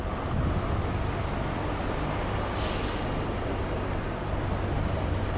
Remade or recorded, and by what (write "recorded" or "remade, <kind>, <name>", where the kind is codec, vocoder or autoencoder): recorded